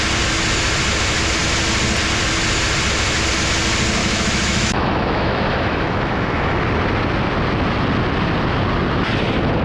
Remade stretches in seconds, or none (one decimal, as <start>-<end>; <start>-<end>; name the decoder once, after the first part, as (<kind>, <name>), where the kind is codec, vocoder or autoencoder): 4.0-6.6 (autoencoder, DAC-VAE)